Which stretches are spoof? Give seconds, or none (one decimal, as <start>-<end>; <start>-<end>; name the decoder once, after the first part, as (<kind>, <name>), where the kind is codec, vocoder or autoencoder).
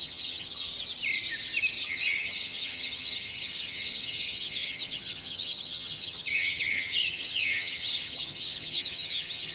0.0-0.7 (vocoder, HiFi-GAN); 1.8-9.5